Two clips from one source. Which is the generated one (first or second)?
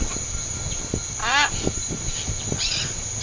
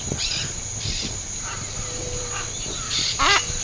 second